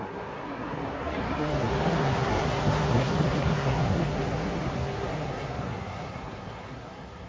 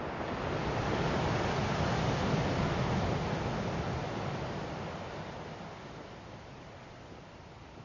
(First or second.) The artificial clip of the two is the first